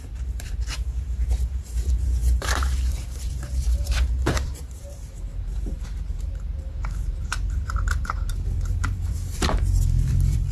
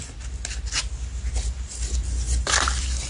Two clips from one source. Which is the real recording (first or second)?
second